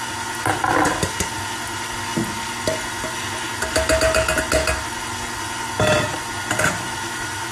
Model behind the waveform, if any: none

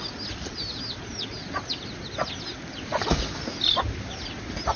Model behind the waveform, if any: none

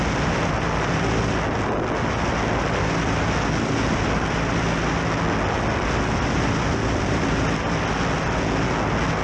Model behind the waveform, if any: none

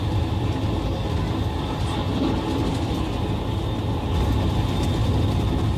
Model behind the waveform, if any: none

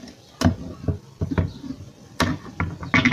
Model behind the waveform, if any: none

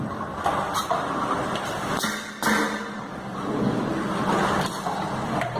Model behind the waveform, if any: none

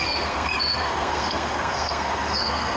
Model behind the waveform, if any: codec, SNAC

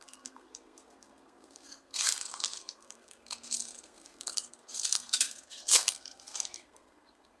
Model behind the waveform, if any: codec, SNAC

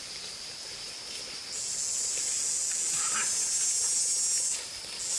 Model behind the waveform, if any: none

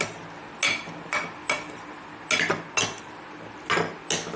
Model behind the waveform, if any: none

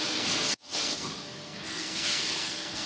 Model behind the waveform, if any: codec, SNAC